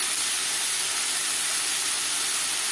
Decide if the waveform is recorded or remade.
recorded